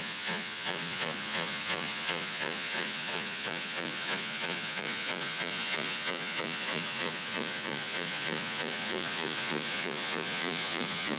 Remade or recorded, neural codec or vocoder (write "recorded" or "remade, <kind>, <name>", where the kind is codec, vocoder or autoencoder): remade, vocoder, Vocos